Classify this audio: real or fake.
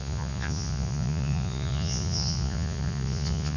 fake